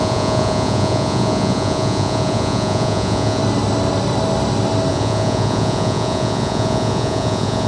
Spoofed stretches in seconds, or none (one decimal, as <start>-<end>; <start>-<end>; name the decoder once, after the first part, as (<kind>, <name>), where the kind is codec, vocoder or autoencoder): 0.0-3.4 (vocoder, Vocos); 4.9-7.7